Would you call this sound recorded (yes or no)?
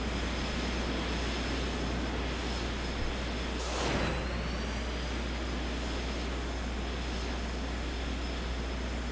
yes